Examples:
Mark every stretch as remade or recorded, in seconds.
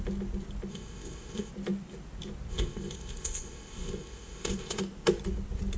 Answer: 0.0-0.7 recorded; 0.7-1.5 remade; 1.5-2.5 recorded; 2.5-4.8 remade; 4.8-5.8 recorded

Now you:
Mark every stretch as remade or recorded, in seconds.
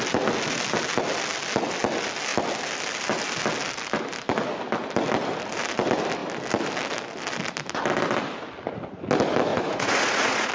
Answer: 0.0-9.5 recorded; 9.5-10.5 remade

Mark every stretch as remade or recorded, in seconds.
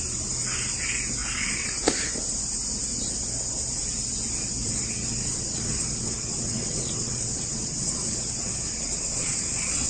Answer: 0.0-4.6 recorded; 4.6-9.9 remade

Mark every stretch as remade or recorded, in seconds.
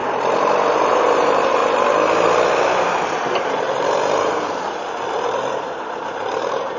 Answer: 0.0-0.7 recorded; 0.7-1.6 remade; 1.6-2.8 recorded; 2.8-6.8 remade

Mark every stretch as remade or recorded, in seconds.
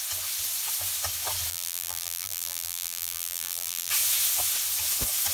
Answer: 0.0-1.5 recorded; 1.5-3.9 remade; 3.9-5.3 recorded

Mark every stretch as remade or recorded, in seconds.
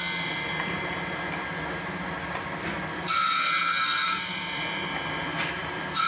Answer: 0.0-0.5 remade; 0.5-4.1 recorded; 4.1-6.1 remade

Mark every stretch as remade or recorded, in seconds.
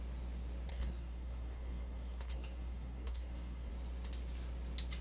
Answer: 0.0-0.7 recorded; 0.7-3.7 remade; 3.7-5.0 recorded